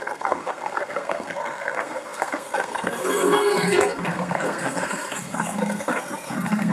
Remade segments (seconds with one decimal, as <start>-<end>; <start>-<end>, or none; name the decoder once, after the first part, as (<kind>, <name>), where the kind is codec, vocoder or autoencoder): 0.0-6.7 (codec, SNAC)